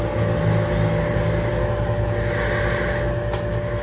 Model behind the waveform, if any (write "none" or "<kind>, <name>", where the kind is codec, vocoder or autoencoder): none